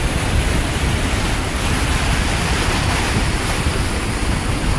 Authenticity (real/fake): real